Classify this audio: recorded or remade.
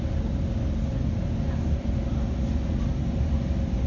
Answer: recorded